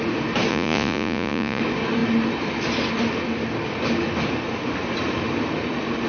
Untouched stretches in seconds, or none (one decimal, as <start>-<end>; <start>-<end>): 0.0-0.5; 1.6-6.1